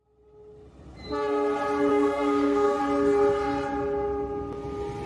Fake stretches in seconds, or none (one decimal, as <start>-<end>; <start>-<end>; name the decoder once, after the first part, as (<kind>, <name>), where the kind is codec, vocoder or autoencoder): 1.9-2.8 (codec, SNAC)